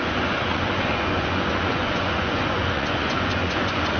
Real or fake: fake